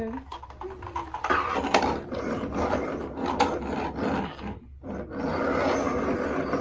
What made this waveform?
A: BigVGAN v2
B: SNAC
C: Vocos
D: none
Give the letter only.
D